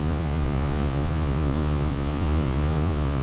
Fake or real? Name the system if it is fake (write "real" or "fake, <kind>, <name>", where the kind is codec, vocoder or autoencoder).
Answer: fake, vocoder, Vocos